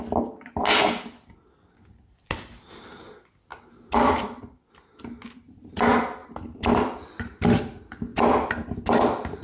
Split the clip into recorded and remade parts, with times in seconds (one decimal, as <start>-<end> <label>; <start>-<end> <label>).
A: 0.0-9.4 recorded